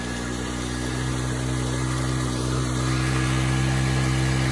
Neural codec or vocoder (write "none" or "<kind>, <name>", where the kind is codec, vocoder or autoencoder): none